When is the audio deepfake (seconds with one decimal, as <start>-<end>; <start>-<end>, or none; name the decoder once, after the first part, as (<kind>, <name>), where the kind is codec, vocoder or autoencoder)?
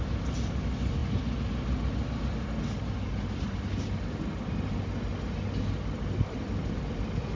none